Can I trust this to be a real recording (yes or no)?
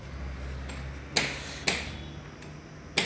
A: yes